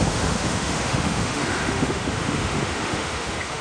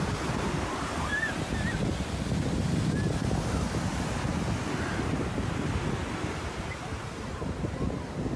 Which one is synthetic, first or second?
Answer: first